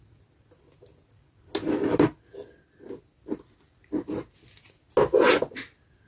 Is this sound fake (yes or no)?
no